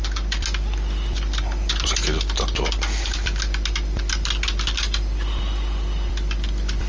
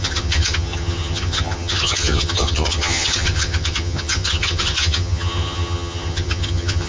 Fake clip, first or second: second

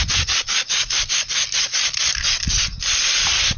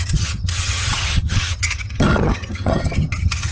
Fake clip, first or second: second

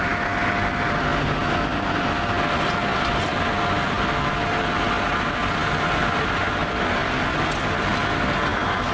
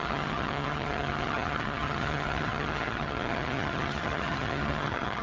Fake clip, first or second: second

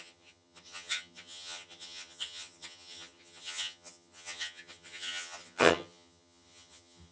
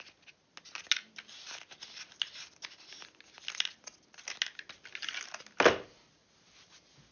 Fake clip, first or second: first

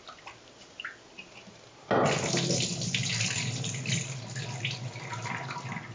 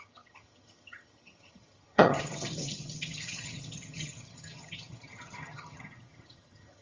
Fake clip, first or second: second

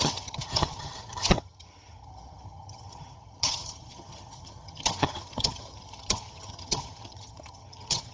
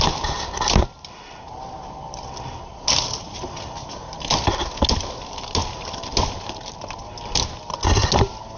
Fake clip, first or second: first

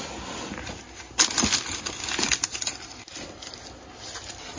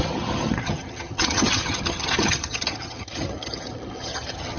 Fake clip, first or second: second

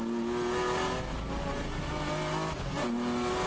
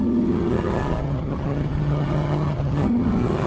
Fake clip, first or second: second